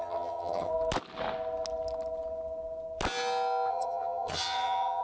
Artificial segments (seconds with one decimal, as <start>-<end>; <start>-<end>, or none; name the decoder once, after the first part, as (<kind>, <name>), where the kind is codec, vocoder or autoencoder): 0.0-0.7 (vocoder, HiFi-GAN); 3.7-5.0